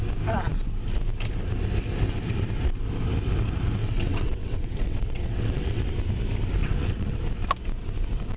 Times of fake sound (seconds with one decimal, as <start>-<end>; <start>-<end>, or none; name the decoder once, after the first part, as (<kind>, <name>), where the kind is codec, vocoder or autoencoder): 3.8-5.8 (vocoder, WaveNeXt); 6.6-7.2

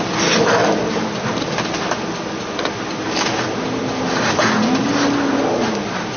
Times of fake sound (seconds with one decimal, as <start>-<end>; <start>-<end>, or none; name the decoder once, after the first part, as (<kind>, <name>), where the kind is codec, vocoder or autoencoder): none

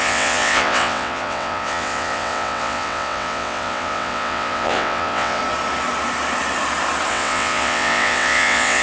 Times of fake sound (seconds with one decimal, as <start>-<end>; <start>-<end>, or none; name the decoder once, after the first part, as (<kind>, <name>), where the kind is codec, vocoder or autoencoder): 0.0-5.4 (vocoder, WaveNeXt); 7.1-8.8